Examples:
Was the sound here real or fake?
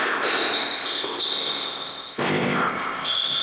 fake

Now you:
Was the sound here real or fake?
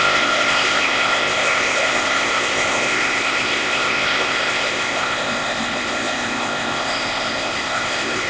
fake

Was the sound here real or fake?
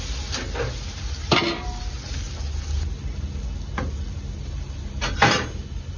real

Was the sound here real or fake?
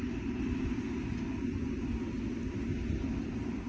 real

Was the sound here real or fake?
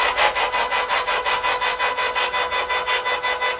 real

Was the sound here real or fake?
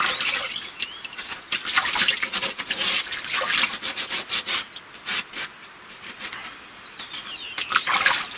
real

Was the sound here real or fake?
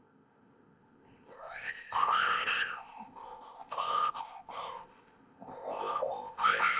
fake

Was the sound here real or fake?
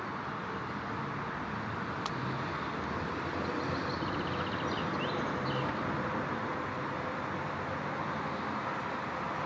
real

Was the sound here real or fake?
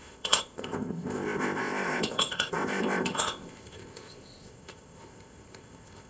fake